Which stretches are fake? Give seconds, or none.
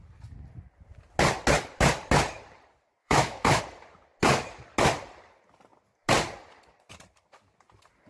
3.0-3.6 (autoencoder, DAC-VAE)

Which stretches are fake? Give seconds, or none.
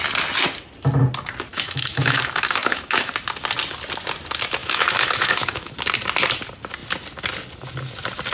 1.5-3.1 (autoencoder, DAC-VAE); 4.6-5.7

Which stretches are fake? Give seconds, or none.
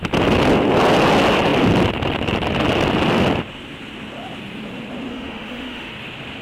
5.1-5.9 (autoencoder, DAC-VAE)